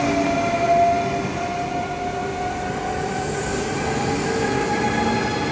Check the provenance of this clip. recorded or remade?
recorded